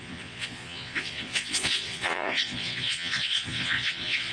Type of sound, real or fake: fake